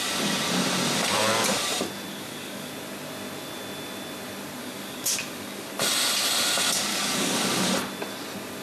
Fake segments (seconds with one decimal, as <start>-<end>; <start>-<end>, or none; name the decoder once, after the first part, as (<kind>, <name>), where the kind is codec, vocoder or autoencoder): 2.1-2.7 (codec, DAC); 4.6-5.7; 6.9-7.7